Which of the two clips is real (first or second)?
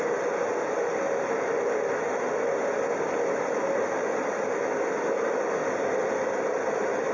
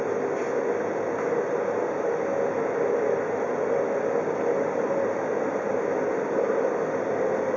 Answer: second